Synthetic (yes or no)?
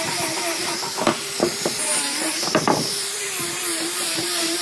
yes